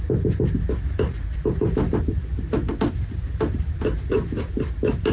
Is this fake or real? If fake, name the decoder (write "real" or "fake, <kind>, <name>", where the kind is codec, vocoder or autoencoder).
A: real